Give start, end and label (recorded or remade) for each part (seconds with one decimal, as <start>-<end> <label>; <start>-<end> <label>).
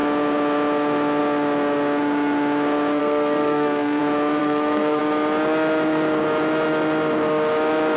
0.0-3.0 recorded; 3.0-4.0 remade; 4.0-4.4 recorded; 4.4-5.0 remade; 5.0-8.0 recorded